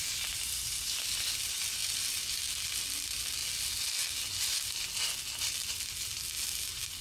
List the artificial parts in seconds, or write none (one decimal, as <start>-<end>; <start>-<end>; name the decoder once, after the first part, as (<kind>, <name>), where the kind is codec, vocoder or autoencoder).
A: none